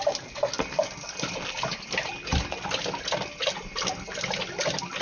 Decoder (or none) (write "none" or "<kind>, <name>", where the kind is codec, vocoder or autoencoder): none